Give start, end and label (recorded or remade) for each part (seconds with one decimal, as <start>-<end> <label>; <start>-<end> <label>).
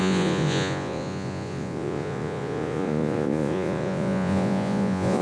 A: 0.0-5.2 remade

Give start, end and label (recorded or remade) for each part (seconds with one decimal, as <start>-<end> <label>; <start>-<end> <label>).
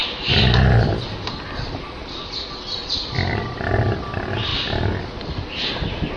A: 0.0-6.2 recorded